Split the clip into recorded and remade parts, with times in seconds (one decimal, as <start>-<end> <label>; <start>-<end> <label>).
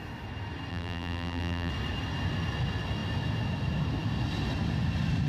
0.0-0.7 recorded; 0.7-1.7 remade; 1.7-5.3 recorded